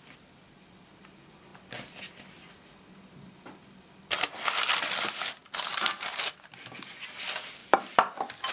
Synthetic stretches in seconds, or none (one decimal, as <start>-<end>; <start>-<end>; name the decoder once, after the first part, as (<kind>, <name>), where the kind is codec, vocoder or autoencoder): none